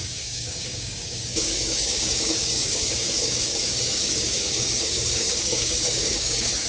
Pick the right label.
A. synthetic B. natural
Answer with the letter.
A